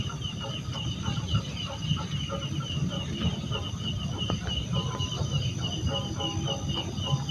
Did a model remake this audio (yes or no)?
no